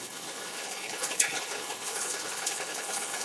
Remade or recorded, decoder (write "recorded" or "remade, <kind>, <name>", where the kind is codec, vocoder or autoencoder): remade, codec, HILCodec